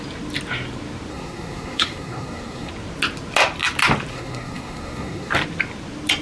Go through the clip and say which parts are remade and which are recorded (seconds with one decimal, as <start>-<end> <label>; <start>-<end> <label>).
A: 0.0-1.1 recorded; 1.1-2.7 remade; 2.7-4.1 recorded; 4.1-5.3 remade; 5.3-6.2 recorded